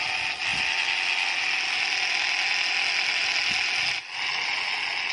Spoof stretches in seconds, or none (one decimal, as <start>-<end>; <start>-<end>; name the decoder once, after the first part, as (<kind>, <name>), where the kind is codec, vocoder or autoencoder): none